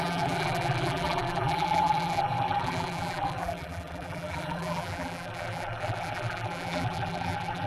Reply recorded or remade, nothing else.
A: remade